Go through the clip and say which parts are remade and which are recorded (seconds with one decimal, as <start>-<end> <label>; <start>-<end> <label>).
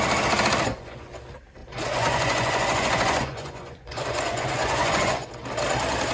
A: 0.0-0.7 recorded; 0.7-1.2 remade; 1.2-1.6 recorded; 1.6-5.3 remade; 5.3-6.1 recorded